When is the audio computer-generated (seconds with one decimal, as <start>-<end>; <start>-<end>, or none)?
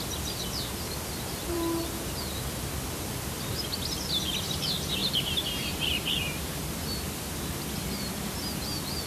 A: 5.0-6.6